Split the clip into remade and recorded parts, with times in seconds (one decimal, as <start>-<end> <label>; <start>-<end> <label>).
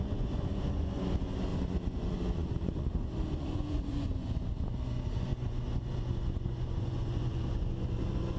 0.0-8.4 remade